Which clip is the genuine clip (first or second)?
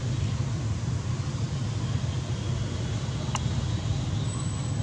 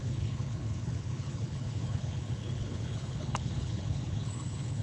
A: first